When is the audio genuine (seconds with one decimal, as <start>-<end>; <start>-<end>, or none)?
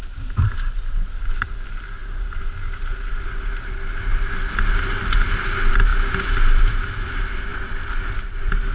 0.0-8.7